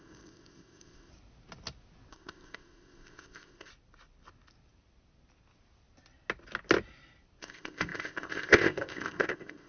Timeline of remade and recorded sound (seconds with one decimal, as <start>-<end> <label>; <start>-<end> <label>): 0.0-1.1 remade; 1.1-2.1 recorded; 2.1-3.7 remade; 3.7-7.4 recorded; 7.4-9.7 remade